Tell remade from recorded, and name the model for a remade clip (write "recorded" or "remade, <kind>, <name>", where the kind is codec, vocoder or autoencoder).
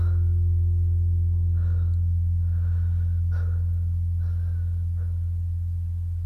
recorded